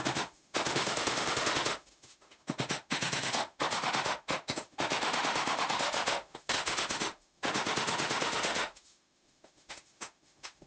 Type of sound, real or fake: fake